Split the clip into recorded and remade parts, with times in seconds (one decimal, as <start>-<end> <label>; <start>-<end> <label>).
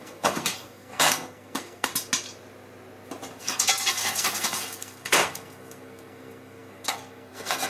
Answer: 0.0-1.9 remade; 1.9-3.4 recorded; 3.4-7.7 remade